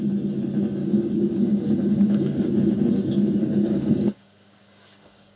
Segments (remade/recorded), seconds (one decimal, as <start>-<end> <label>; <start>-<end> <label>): 0.0-0.8 recorded; 0.8-2.5 remade; 2.5-3.4 recorded; 3.4-5.4 remade